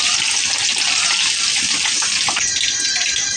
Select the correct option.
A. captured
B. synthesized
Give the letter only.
A